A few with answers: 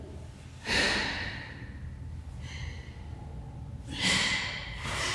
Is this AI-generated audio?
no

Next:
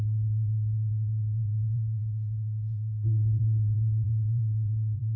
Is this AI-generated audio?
yes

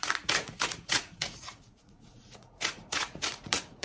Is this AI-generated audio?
yes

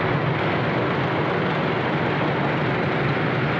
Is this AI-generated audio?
no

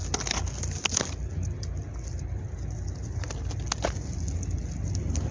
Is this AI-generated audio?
no